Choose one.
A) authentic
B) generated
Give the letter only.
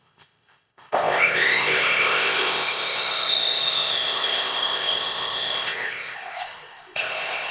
B